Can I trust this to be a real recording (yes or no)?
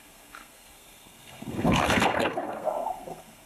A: no